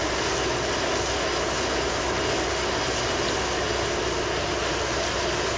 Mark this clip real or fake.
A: real